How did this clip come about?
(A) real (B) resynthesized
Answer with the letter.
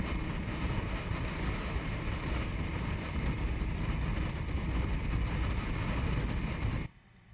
A